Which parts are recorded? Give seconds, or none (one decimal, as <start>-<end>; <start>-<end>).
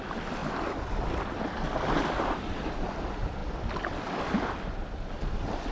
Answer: 0.0-5.7